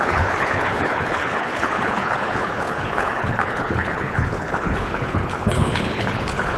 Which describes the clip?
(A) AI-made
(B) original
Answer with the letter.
A